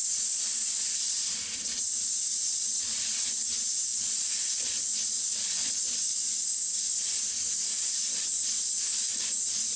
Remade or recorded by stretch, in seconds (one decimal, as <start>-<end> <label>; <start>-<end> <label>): 0.0-2.3 recorded; 2.3-3.1 remade; 3.1-9.8 recorded